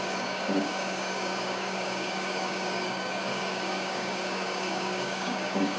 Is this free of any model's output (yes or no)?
no